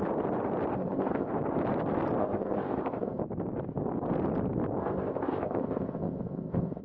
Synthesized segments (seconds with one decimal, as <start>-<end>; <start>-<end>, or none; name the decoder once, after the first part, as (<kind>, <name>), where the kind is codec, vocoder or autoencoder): 0.7-1.3 (codec, ZipCodec); 2.2-3.2; 4.8-6.8